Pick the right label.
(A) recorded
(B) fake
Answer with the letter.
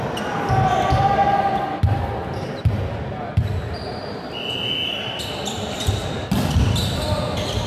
A